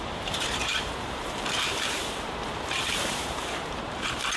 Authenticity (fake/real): fake